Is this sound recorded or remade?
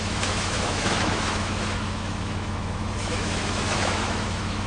remade